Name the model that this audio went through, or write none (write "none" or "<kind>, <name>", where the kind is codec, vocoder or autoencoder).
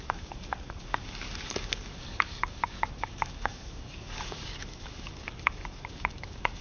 codec, DAC